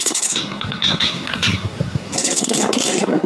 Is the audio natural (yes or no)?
no